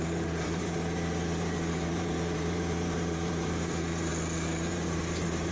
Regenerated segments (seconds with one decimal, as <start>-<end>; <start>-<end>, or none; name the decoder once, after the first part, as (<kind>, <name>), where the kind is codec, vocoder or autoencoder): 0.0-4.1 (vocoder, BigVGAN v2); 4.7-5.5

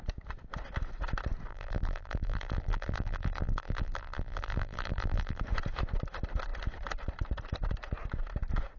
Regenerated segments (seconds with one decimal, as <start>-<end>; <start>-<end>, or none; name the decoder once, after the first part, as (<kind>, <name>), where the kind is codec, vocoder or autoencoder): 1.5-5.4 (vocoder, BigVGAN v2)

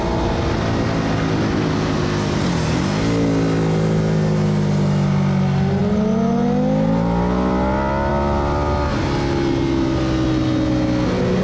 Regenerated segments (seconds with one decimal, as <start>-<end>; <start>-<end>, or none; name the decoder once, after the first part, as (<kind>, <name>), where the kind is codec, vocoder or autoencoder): none

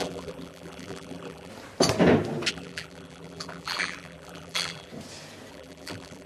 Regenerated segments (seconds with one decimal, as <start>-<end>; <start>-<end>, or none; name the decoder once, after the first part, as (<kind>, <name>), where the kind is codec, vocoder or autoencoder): 0.0-1.5 (vocoder, BigVGAN v2); 2.5-4.9; 5.5-6.3

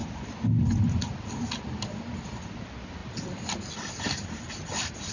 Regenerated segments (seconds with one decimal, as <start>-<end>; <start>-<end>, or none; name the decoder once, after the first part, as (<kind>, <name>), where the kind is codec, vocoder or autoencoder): none

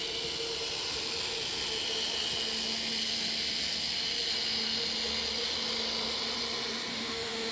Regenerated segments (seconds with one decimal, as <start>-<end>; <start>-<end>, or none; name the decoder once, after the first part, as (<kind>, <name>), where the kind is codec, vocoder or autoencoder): 6.9-7.5 (autoencoder, DAC-VAE)

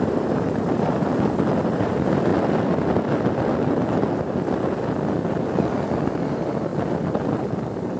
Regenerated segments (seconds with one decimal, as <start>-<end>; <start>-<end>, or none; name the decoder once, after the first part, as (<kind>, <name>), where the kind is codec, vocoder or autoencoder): 0.0-1.1 (vocoder, BigVGAN v2); 1.7-2.3; 6.3-6.7